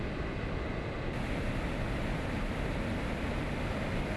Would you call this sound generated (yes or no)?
no